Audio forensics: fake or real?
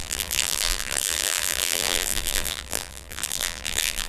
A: fake